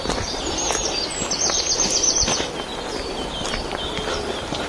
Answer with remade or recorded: recorded